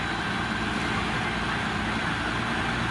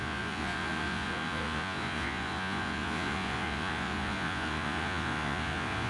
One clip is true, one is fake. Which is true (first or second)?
first